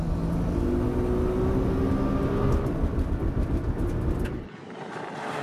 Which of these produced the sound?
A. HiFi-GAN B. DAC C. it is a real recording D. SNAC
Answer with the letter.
C